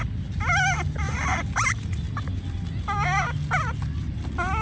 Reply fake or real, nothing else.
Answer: real